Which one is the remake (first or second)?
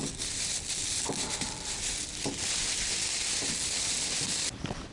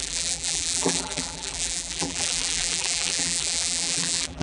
second